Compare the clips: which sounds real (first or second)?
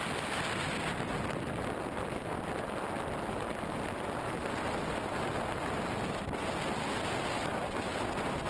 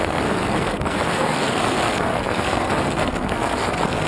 first